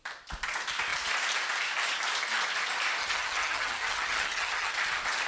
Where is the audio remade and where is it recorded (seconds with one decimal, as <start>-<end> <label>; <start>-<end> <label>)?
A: 0.0-3.0 recorded; 3.0-4.7 remade; 4.7-5.3 recorded